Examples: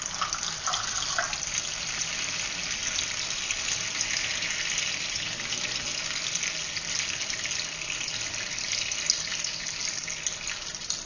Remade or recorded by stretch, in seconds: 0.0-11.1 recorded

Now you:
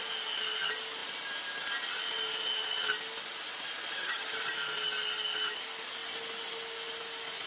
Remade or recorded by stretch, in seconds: 0.0-3.9 recorded; 3.9-4.5 remade; 4.5-7.5 recorded

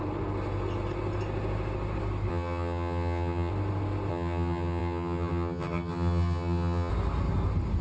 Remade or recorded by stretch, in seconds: 0.0-2.3 recorded; 2.3-3.5 remade; 3.5-4.1 recorded; 4.1-6.9 remade; 6.9-7.8 recorded